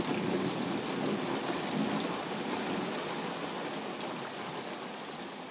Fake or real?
real